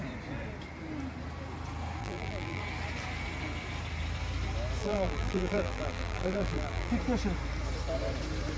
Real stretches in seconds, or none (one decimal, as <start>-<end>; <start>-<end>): 0.0-2.0; 2.6-4.8; 6.9-8.6